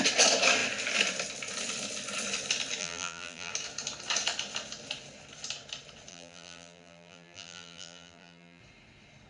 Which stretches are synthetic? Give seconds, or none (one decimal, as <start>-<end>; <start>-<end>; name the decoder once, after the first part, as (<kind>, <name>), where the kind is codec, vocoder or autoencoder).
2.8-3.5 (vocoder, BigVGAN v2); 6.1-8.6